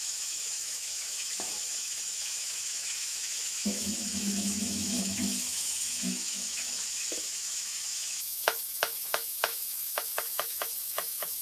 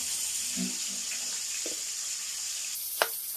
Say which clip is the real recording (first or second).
second